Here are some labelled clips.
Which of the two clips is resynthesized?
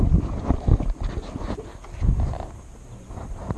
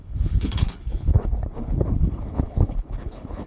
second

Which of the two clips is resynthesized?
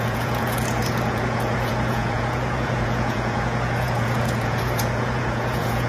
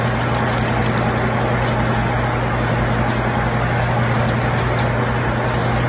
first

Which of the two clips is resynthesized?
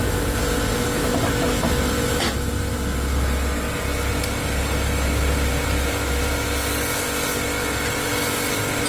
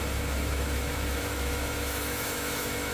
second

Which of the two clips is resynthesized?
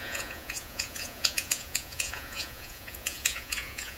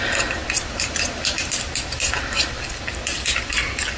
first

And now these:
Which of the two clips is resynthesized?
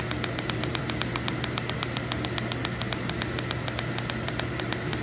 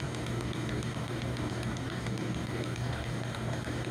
second